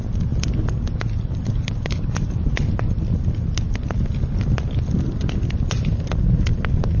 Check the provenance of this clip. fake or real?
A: real